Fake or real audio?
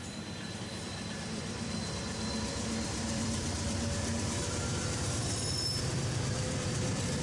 fake